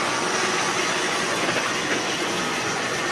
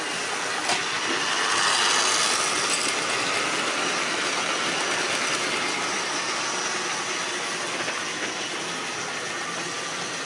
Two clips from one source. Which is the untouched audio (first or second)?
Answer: second